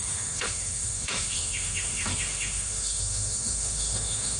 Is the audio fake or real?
fake